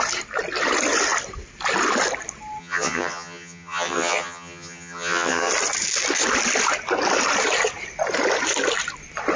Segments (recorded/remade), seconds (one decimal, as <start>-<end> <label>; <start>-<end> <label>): 0.0-2.6 recorded; 2.6-5.5 remade; 5.5-9.4 recorded